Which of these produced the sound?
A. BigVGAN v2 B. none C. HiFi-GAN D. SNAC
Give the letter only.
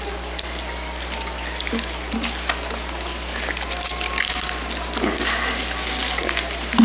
B